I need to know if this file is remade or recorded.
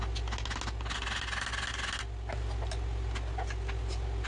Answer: recorded